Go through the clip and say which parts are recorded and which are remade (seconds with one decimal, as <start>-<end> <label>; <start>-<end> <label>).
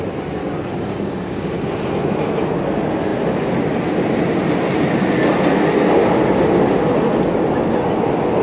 0.0-0.4 recorded; 0.4-1.5 remade; 1.5-8.4 recorded